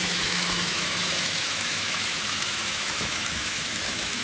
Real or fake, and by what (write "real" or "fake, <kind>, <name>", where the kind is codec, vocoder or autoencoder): fake, autoencoder, DAC-VAE